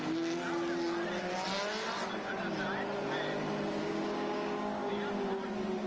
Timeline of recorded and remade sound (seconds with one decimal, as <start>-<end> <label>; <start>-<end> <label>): 0.0-3.8 recorded; 3.8-4.9 remade; 4.9-5.9 recorded